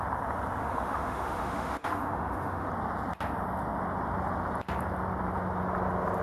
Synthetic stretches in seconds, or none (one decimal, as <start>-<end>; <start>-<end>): 0.6-2.7

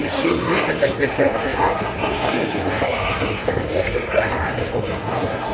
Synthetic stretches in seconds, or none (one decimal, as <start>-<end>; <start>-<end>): 0.0-5.5

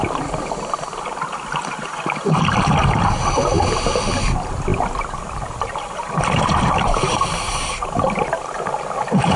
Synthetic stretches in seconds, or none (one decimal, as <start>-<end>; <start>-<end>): 0.0-4.7; 5.3-9.4

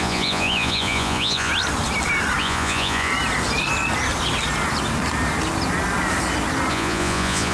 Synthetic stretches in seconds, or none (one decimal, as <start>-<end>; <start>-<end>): 0.0-1.5; 2.4-3.1; 6.7-7.5

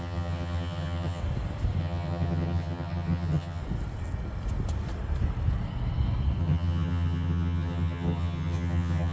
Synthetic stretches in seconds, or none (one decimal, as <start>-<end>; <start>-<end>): 0.0-1.2; 1.8-3.6; 6.4-9.1

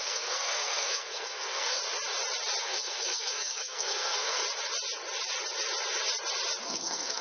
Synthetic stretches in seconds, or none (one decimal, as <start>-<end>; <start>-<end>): 0.0-1.8; 2.6-4.4; 6.6-7.2

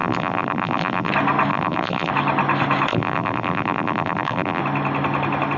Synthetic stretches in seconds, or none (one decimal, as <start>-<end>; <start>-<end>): 0.0-1.1; 1.5-2.1; 2.9-4.6

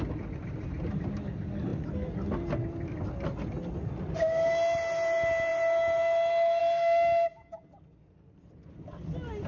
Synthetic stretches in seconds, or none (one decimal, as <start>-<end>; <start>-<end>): none